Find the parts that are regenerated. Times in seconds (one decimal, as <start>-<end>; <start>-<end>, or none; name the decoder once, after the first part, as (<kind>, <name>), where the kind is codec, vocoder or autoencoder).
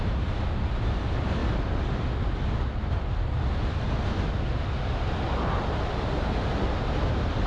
none